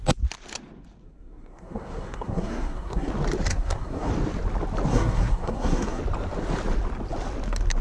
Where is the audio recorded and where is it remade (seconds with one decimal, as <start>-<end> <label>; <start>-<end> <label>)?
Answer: 0.0-1.0 recorded; 1.0-3.1 remade; 3.1-3.5 recorded; 3.5-4.1 remade; 4.1-4.9 recorded; 4.9-6.0 remade; 6.0-7.8 recorded